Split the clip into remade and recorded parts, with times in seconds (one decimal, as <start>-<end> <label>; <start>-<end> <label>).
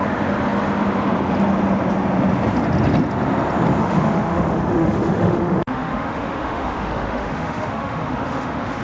0.0-3.8 recorded; 3.8-8.8 remade